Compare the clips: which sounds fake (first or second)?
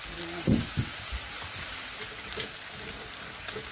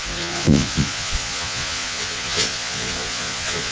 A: second